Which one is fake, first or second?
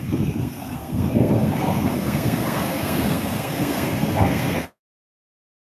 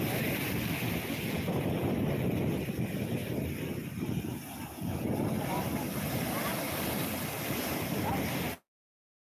first